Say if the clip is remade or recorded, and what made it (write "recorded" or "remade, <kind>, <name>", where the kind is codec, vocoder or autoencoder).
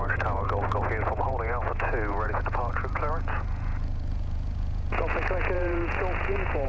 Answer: remade, vocoder, Vocos